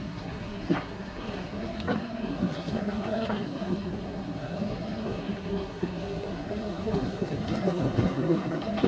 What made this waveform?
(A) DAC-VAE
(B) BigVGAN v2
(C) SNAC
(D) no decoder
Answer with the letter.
C